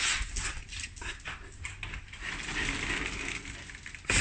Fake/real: real